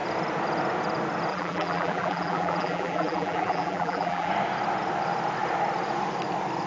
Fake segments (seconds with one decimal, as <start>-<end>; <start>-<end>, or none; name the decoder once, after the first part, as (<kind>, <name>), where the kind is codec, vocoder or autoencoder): 1.3-4.3 (vocoder, BigVGAN v2)